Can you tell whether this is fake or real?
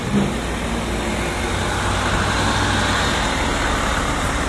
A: real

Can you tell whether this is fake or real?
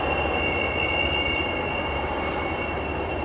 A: fake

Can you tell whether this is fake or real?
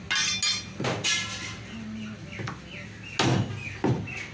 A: real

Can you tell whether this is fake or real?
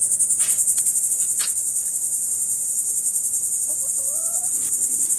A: real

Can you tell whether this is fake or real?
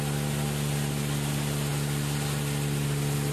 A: real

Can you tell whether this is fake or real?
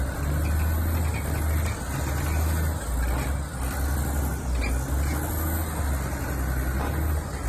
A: real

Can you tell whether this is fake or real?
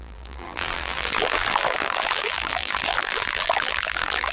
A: fake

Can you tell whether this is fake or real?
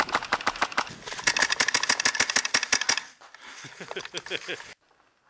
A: real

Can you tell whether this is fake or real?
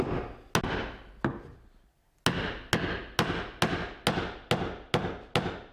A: real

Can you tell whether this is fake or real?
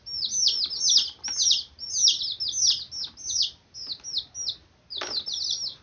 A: real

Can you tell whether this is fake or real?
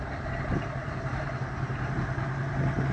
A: fake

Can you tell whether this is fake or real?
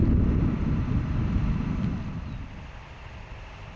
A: real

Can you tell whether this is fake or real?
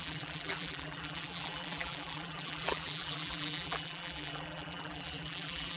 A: fake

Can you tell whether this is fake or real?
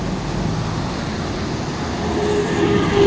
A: real